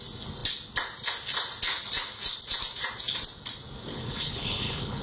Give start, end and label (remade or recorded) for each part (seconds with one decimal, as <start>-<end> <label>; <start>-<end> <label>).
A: 0.0-3.9 recorded; 3.9-5.0 remade

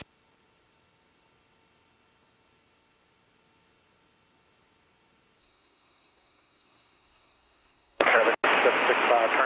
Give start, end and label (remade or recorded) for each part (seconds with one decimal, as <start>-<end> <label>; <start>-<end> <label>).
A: 0.0-5.4 recorded; 5.4-8.2 remade; 8.2-9.5 recorded

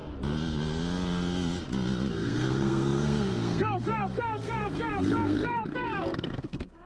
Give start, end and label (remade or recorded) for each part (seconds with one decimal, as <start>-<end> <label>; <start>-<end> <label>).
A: 0.0-2.1 recorded; 2.1-6.9 remade

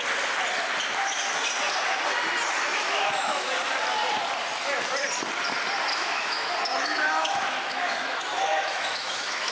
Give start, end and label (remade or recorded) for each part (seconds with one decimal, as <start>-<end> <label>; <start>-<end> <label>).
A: 0.0-2.7 recorded; 2.7-3.5 remade; 3.5-5.9 recorded; 5.9-9.5 remade